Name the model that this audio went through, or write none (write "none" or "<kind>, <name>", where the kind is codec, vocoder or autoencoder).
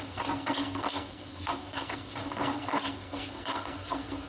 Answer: codec, SNAC